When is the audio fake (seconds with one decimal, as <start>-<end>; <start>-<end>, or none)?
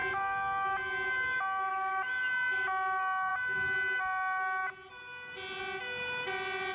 none